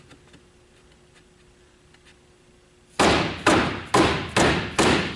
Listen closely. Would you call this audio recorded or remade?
recorded